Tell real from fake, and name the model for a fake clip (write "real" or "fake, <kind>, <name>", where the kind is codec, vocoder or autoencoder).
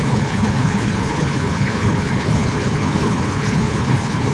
fake, codec, HILCodec